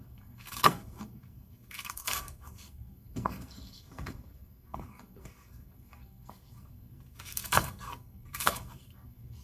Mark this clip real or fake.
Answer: fake